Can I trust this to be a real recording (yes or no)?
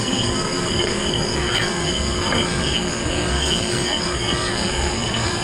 no